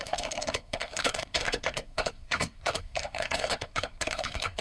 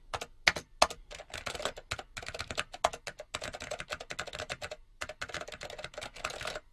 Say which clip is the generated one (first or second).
first